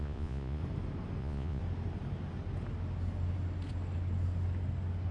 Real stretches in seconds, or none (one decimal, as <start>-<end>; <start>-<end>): 0.6-1.2; 1.6-5.1